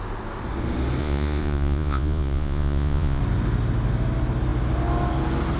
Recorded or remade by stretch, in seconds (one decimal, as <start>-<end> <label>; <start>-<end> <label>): 0.0-1.0 recorded; 1.0-3.2 remade; 3.2-5.6 recorded